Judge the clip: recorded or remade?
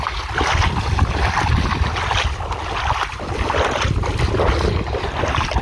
recorded